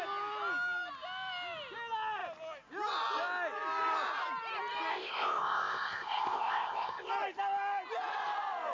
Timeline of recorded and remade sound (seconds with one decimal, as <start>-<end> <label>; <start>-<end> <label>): 0.0-4.9 recorded; 4.9-7.1 remade; 7.1-8.7 recorded